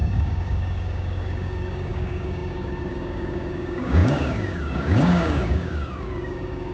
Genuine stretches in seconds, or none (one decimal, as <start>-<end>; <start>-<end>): none